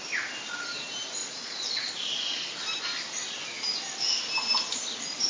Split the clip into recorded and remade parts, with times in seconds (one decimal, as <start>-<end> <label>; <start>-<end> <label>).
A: 0.0-1.2 recorded; 1.2-1.9 remade; 1.9-5.3 recorded